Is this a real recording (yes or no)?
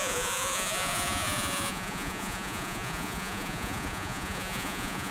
no